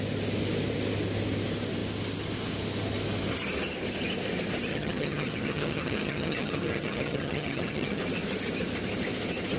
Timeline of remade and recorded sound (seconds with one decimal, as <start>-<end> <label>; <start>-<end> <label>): 0.0-4.7 recorded; 4.7-8.0 remade; 8.0-9.6 recorded